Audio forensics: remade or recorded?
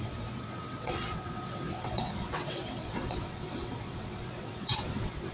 remade